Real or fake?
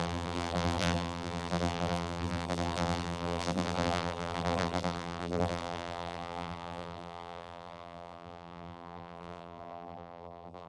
fake